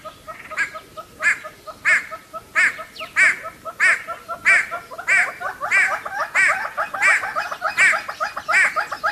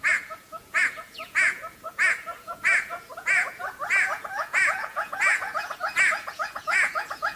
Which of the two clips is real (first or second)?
first